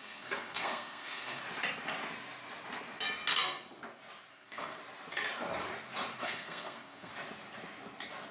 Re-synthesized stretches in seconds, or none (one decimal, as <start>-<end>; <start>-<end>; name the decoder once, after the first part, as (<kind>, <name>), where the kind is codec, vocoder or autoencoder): 0.0-1.4 (codec, SNAC); 4.3-4.8; 6.2-7.1

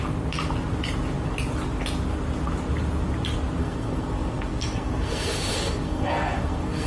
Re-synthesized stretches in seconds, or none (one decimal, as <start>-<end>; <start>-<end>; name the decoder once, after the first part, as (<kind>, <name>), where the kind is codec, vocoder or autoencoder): 3.6-6.9 (codec, SNAC)

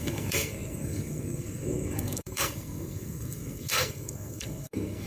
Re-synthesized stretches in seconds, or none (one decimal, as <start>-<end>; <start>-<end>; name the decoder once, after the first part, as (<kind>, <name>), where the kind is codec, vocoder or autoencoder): 0.0-5.1 (codec, SNAC)

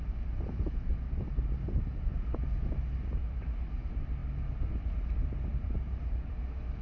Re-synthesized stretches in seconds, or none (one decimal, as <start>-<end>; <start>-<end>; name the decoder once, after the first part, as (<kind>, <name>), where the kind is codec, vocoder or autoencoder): 5.5-6.3 (vocoder, BigVGAN v2)

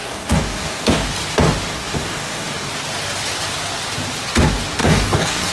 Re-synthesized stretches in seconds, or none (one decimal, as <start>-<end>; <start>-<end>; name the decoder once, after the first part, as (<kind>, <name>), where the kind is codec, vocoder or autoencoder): 0.0-1.1 (codec, DAC); 1.7-2.7; 4.8-5.5

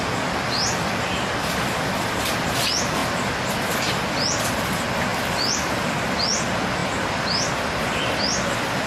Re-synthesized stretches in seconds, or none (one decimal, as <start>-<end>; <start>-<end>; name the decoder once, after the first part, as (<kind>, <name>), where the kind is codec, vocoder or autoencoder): 5.1-5.7 (vocoder, BigVGAN v2)

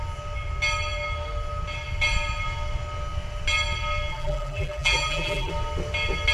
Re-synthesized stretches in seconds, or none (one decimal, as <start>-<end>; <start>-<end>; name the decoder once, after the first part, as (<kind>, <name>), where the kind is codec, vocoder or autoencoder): 4.1-5.5 (vocoder, BigVGAN v2)

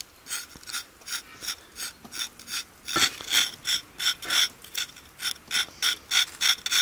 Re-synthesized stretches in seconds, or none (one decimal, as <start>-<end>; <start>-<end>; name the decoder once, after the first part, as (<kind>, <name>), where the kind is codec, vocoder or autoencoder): none